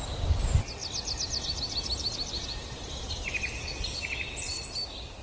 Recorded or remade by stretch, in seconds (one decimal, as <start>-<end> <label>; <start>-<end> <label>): 0.0-5.2 recorded